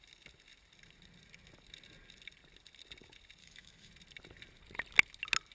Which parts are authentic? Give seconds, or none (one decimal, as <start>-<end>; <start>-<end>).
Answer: 0.0-3.4; 3.9-5.5